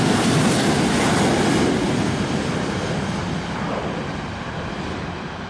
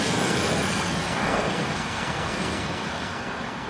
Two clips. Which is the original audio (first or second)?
first